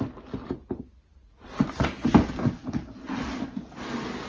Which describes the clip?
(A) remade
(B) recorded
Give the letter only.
B